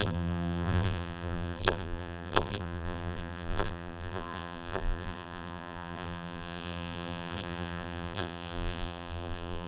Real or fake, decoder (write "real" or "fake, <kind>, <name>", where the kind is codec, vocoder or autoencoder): fake, vocoder, BigVGAN v2